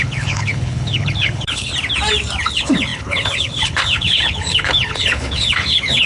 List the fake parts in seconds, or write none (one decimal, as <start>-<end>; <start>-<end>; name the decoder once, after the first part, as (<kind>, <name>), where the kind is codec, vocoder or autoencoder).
0.0-1.7 (codec, HILCodec); 2.4-6.1

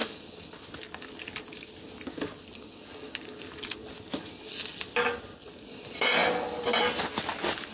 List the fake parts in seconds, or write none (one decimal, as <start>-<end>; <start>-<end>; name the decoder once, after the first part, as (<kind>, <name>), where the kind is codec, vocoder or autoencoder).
none